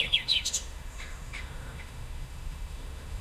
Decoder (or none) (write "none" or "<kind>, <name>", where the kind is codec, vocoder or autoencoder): autoencoder, DAC-VAE